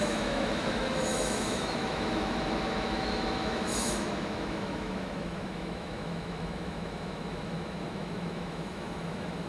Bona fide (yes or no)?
no